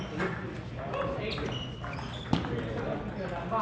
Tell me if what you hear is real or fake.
real